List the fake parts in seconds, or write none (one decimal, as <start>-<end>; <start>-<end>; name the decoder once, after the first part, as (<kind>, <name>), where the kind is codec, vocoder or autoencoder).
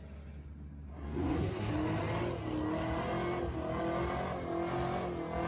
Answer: 0.9-1.7 (codec, SNAC)